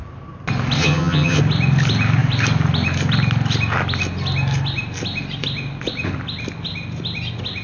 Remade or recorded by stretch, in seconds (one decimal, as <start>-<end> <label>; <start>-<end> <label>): 0.0-0.8 recorded; 0.8-1.4 remade; 1.4-7.6 recorded